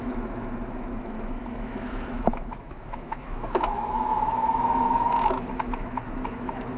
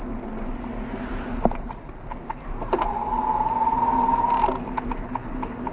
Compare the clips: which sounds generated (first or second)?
first